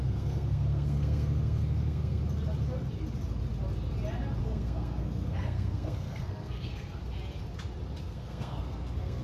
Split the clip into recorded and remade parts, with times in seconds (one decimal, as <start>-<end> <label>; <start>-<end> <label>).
0.0-2.2 remade; 2.2-4.4 recorded; 4.4-7.0 remade; 7.0-8.0 recorded; 8.0-9.2 remade